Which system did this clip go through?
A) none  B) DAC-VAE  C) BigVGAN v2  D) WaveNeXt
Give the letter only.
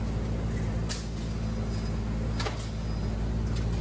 A